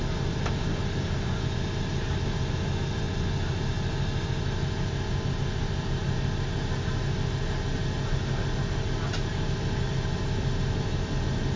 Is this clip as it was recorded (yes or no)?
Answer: yes